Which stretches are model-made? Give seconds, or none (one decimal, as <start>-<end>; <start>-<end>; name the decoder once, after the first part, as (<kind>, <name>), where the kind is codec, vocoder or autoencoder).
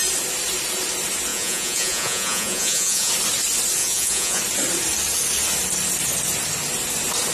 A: 1.3-3.1 (vocoder, Vocos); 3.8-4.4